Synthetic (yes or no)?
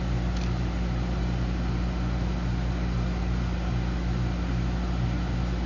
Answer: no